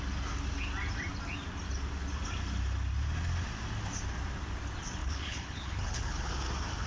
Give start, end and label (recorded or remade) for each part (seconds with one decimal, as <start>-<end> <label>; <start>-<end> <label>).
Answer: 0.0-5.0 recorded; 5.0-6.3 remade; 6.3-6.9 recorded